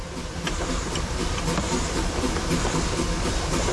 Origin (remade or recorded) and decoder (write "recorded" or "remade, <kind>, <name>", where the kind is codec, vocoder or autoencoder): recorded